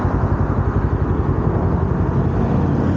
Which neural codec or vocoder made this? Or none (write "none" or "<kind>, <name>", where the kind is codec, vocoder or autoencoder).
none